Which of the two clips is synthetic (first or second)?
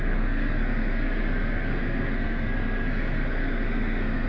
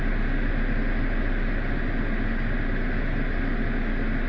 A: first